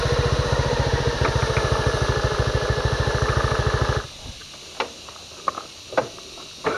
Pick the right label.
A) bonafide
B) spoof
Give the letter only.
A